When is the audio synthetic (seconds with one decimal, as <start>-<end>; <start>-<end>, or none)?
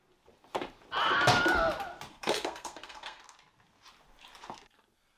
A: 2.1-3.2